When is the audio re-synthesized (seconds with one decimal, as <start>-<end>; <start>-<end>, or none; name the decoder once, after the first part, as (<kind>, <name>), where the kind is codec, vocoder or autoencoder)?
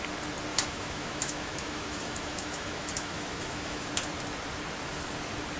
0.5-3.9 (autoencoder, DAC-VAE)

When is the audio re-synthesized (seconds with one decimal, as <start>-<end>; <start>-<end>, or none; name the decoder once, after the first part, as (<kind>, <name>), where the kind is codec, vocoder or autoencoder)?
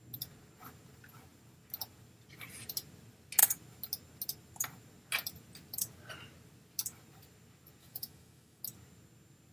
7.8-8.6 (autoencoder, DAC-VAE)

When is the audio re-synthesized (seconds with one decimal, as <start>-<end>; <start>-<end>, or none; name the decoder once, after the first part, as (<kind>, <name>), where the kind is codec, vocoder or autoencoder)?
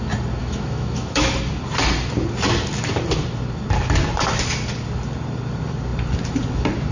0.4-1.3 (autoencoder, DAC-VAE)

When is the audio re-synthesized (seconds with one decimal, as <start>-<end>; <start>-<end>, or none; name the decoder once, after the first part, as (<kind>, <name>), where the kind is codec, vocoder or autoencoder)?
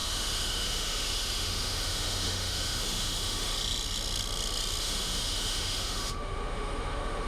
0.0-3.5 (autoencoder, DAC-VAE); 4.8-7.3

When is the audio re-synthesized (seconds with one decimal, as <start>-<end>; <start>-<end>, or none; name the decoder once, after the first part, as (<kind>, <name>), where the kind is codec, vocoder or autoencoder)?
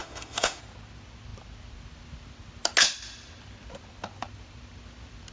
0.0-0.6 (autoencoder, DAC-VAE)